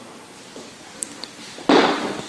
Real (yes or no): no